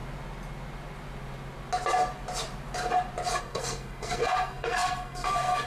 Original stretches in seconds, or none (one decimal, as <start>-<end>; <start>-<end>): 0.0-3.4